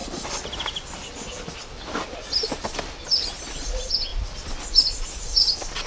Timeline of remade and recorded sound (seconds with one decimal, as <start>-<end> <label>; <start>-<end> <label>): 0.0-2.8 remade; 2.8-4.1 recorded; 4.1-4.6 remade; 4.6-5.9 recorded